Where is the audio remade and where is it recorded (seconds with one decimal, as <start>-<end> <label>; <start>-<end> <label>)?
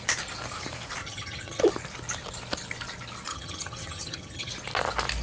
0.0-1.0 recorded; 1.0-1.6 remade; 1.6-3.3 recorded; 3.3-4.5 remade; 4.5-5.2 recorded